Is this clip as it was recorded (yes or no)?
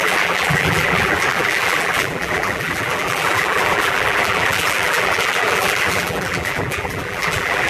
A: no